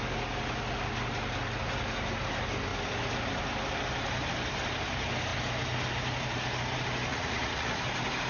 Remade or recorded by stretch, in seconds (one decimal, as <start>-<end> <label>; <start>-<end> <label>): 0.0-7.1 recorded; 7.1-7.8 remade; 7.8-8.3 recorded